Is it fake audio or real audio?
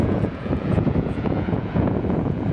fake